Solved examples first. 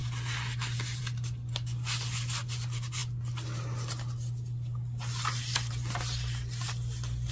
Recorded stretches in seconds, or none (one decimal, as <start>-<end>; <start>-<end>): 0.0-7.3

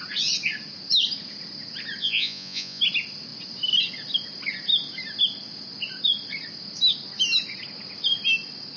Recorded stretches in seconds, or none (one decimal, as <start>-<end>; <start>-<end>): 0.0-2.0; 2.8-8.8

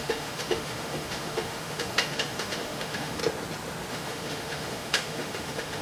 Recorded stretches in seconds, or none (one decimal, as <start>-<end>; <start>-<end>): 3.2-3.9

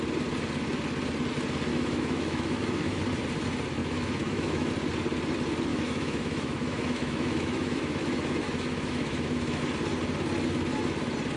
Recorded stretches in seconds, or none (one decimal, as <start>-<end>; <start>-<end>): 0.0-1.7; 3.0-3.8; 4.7-5.7; 9.6-11.4